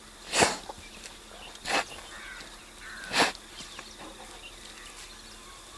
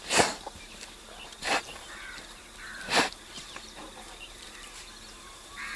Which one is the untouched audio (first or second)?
first